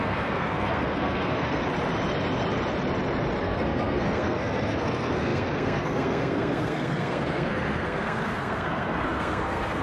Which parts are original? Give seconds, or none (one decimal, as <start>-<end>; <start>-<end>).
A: 1.6-3.4